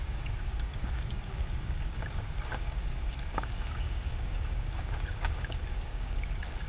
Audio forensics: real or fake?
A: fake